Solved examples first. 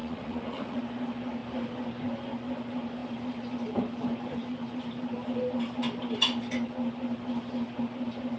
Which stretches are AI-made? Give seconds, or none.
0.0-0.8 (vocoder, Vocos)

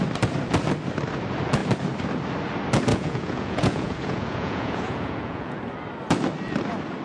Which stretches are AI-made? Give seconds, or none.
2.9-5.6 (vocoder, Vocos)

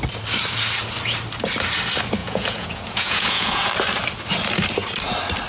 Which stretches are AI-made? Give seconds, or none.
2.2-3.7 (vocoder, Vocos)

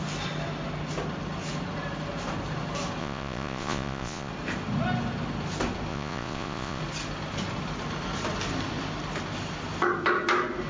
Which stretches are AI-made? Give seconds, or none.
3.0-4.3 (vocoder, Vocos); 5.9-6.8

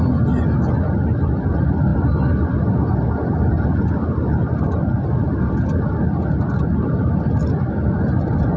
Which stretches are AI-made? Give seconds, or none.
none

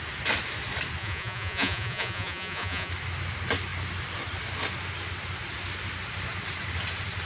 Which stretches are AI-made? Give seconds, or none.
1.0-2.9 (vocoder, Vocos)

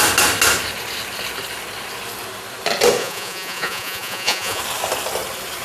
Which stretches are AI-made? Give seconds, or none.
3.0-4.6 (vocoder, Vocos)

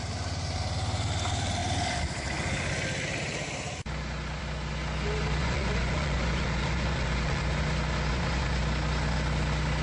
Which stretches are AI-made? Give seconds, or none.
5.4-7.4 (vocoder, Vocos); 8.1-8.6